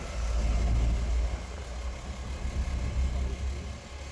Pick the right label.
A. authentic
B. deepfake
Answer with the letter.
A